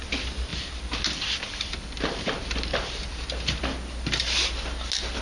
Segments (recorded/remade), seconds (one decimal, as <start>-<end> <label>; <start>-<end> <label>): 0.0-0.5 recorded; 0.5-3.6 remade; 3.6-5.2 recorded